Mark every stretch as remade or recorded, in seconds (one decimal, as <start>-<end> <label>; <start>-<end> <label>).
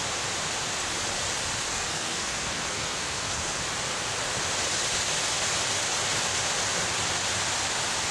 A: 0.0-1.7 recorded; 1.7-3.6 remade; 3.6-8.1 recorded